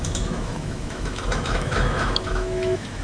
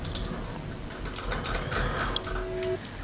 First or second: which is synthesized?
first